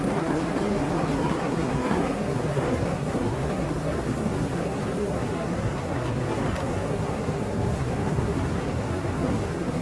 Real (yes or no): no